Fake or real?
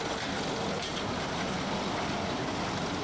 real